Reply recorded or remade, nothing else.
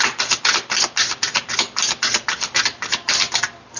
recorded